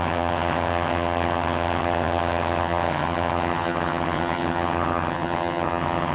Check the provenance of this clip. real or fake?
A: fake